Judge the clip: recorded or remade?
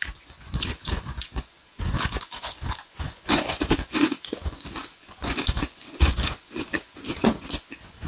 remade